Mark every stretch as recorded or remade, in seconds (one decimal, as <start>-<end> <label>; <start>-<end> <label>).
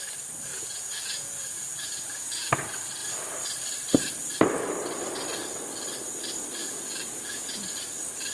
0.0-0.5 recorded; 0.5-2.5 remade; 2.5-6.6 recorded; 6.6-7.6 remade; 7.6-8.3 recorded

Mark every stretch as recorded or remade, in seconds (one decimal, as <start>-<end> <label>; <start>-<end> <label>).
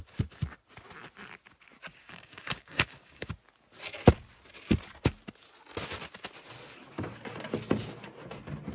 0.0-1.9 recorded; 1.9-3.3 remade; 3.3-8.7 recorded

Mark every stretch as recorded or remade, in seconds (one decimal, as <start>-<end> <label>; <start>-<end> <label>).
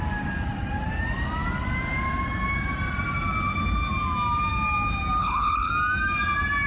0.0-5.2 recorded; 5.2-5.7 remade; 5.7-6.7 recorded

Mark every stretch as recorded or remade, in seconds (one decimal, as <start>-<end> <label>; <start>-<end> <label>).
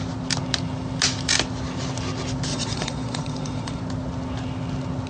0.0-2.5 recorded; 2.5-3.8 remade; 3.8-5.1 recorded